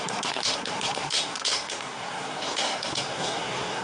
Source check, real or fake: fake